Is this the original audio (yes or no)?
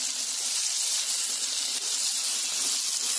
yes